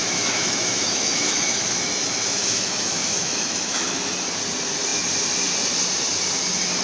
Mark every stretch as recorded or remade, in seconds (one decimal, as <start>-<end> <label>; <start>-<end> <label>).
0.0-4.1 remade; 4.1-6.8 recorded